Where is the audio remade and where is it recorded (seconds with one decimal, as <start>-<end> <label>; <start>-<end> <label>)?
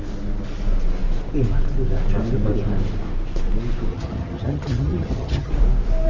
0.0-3.9 recorded; 3.9-5.5 remade; 5.5-6.1 recorded